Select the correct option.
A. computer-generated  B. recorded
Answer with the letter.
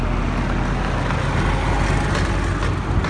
B